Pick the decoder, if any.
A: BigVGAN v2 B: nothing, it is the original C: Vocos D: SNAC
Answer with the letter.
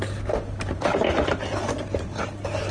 B